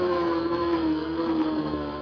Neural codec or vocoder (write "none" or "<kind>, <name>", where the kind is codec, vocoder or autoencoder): codec, SNAC